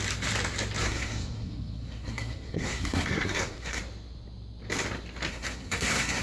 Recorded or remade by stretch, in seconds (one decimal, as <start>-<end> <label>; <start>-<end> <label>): 0.0-0.8 recorded; 0.8-3.8 remade; 3.8-5.3 recorded; 5.3-6.2 remade